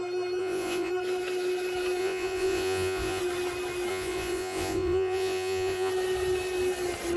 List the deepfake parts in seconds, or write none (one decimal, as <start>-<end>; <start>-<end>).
0.4-0.9; 2.0-3.2; 3.9-5.9